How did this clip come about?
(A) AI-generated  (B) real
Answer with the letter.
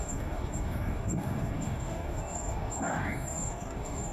A